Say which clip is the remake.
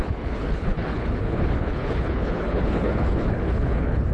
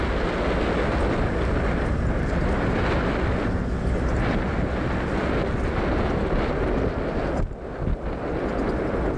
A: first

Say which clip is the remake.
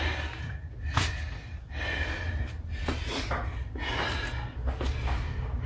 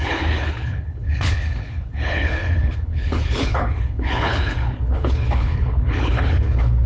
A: second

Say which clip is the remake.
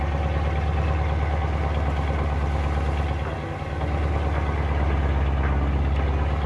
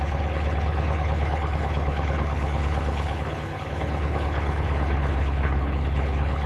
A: second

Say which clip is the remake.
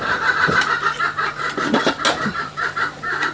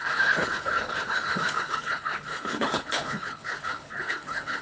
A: second